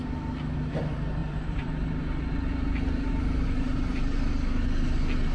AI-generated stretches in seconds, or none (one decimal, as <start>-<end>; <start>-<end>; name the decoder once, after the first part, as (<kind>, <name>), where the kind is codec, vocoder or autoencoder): 1.2-4.3 (vocoder, BigVGAN v2)